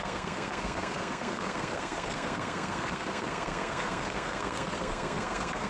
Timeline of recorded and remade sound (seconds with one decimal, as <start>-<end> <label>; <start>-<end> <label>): 0.0-5.7 remade